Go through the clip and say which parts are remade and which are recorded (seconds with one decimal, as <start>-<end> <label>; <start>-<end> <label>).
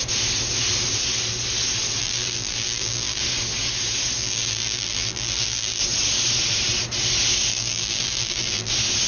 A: 0.0-2.0 recorded; 2.0-3.2 remade; 3.2-4.2 recorded; 4.2-5.8 remade; 5.8-7.5 recorded; 7.5-8.7 remade; 8.7-9.1 recorded